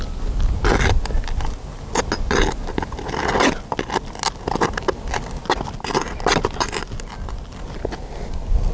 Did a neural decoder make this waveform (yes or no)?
no